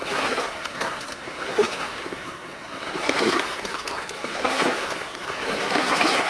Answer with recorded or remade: remade